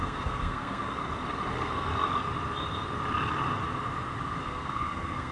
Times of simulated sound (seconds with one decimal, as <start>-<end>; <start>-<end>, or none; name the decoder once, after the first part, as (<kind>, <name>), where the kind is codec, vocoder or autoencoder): 0.0-1.0 (codec, SNAC); 1.5-1.9; 4.4-5.3